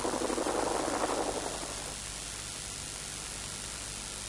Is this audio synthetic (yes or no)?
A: no